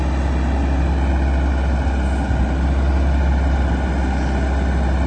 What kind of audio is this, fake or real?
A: real